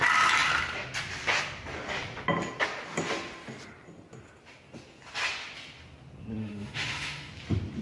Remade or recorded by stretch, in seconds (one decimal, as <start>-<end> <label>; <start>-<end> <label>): 0.0-6.4 recorded; 6.4-7.3 remade; 7.3-7.8 recorded